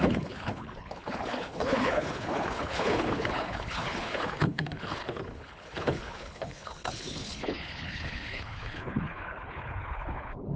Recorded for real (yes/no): no